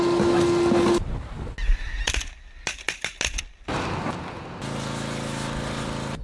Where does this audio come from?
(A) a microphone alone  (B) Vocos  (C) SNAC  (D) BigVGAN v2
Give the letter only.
A